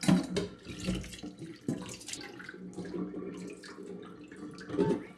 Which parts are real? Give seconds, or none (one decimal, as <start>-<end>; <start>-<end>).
0.0-5.2